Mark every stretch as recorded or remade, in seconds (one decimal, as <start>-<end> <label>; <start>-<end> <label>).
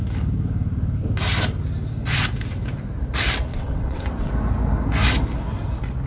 0.0-3.5 recorded; 3.5-4.3 remade; 4.3-6.1 recorded